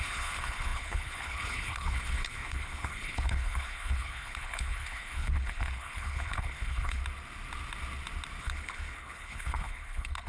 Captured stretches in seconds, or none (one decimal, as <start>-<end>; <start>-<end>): 7.0-8.4